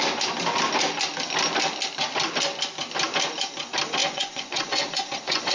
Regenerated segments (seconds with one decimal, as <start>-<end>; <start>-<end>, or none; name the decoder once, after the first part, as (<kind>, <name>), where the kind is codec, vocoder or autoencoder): 4.0-5.5 (vocoder, Vocos)